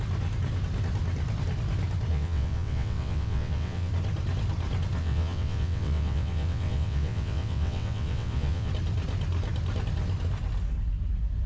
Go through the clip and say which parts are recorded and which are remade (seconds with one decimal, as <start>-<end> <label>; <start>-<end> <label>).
0.0-2.1 recorded; 2.1-3.9 remade; 3.9-5.0 recorded; 5.0-8.7 remade; 8.7-11.5 recorded